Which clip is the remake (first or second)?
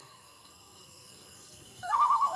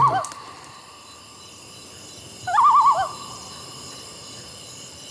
first